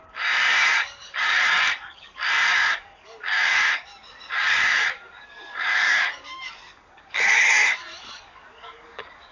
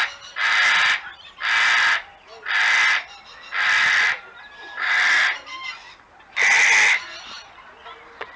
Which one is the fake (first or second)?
first